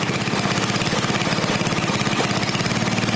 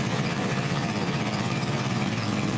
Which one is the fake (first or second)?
second